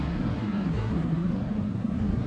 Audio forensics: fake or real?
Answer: fake